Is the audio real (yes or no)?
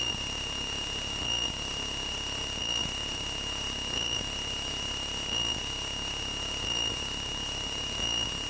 yes